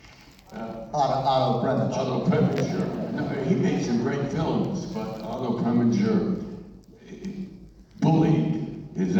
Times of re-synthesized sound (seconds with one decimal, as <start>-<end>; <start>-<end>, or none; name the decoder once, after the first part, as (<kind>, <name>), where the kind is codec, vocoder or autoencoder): 2.6-3.7 (vocoder, BigVGAN v2)